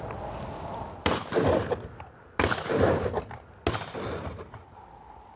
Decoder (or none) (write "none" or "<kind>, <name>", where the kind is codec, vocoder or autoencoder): none